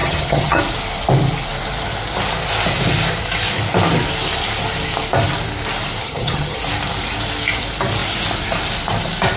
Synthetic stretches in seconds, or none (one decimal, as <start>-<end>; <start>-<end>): 0.0-0.6; 6.0-6.6